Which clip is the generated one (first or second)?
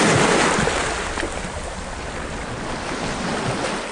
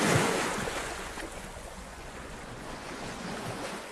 second